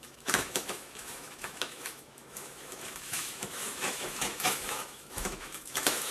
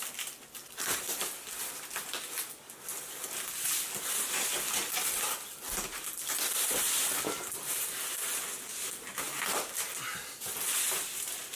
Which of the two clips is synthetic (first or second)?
first